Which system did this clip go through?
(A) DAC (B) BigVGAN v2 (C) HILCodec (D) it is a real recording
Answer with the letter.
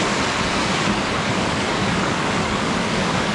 A